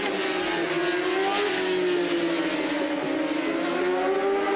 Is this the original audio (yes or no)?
yes